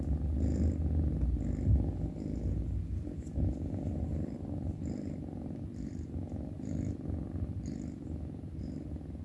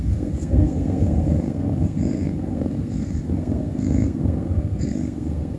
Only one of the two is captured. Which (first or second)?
first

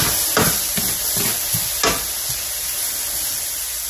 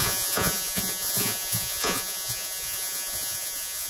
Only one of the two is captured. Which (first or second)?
first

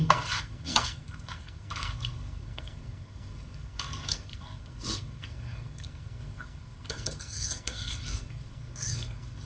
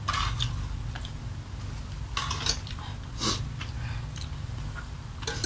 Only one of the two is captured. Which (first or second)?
second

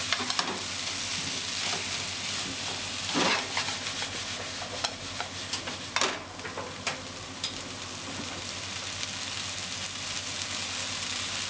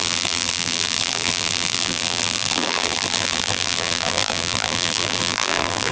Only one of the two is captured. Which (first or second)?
first